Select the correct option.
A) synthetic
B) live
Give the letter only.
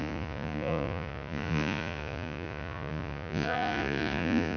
A